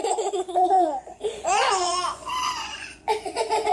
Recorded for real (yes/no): no